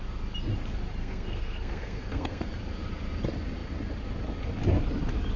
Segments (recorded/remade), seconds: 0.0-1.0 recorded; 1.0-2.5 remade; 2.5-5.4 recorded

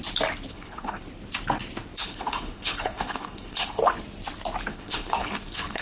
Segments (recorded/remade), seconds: 0.0-0.5 recorded; 0.5-1.0 remade; 1.0-2.0 recorded; 2.0-3.8 remade; 3.8-4.7 recorded; 4.7-5.8 remade

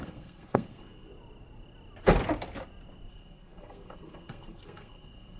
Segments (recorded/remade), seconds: 0.0-1.1 remade; 1.1-3.1 recorded; 3.1-5.4 remade

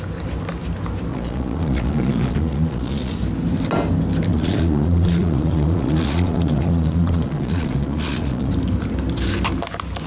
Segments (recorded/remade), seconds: 0.0-1.1 recorded; 1.1-3.1 remade; 3.1-4.3 recorded; 4.3-8.5 remade; 8.5-10.1 recorded

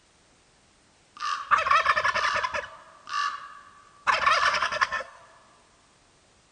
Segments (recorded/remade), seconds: 0.0-4.5 recorded; 4.5-5.2 remade; 5.2-6.5 recorded

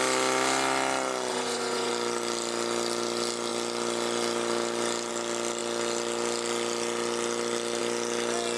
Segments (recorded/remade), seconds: 0.0-1.3 recorded; 1.3-1.9 remade; 1.9-8.6 recorded

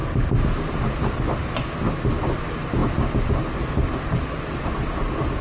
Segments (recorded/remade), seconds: 0.0-5.4 recorded